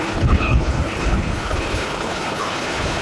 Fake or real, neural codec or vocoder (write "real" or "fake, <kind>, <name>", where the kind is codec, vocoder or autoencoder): fake, codec, HILCodec